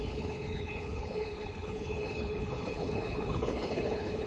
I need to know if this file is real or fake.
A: fake